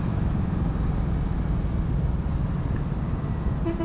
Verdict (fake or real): real